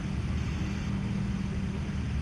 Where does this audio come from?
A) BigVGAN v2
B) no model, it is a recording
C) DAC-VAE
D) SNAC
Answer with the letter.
B